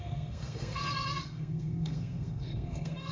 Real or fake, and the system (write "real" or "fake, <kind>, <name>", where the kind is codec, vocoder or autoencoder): fake, codec, SNAC